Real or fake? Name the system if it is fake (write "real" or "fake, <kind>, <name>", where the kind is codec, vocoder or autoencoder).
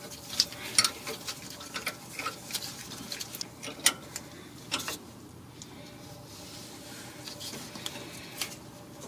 real